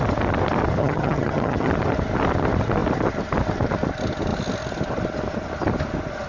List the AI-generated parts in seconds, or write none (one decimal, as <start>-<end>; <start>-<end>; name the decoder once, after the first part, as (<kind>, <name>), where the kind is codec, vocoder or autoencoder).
0.8-1.7 (vocoder, HiFi-GAN)